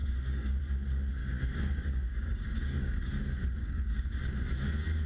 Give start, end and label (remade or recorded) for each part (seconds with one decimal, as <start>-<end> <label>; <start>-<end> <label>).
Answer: 0.0-0.6 remade; 0.6-1.2 recorded; 1.2-3.1 remade; 3.1-3.6 recorded; 3.6-4.1 remade; 4.1-5.1 recorded